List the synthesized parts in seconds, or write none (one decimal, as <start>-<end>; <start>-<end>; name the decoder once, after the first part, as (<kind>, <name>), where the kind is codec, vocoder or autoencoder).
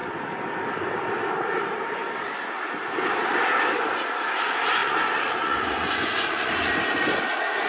4.8-6.7 (vocoder, Vocos)